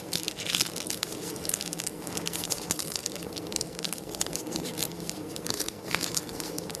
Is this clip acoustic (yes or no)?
no